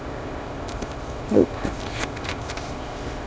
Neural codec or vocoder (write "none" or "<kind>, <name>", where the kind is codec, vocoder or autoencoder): codec, ZipCodec